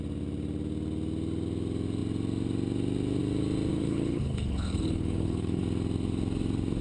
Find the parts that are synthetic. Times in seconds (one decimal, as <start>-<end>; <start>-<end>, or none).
3.7-5.6